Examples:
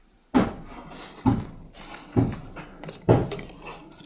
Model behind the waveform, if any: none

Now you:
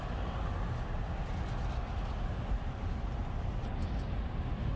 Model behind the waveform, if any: none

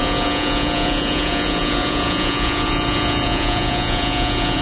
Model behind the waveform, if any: vocoder, Vocos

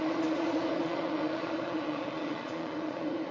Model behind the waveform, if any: vocoder, Vocos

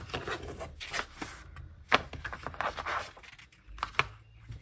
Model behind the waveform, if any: none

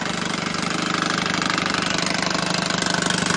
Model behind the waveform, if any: none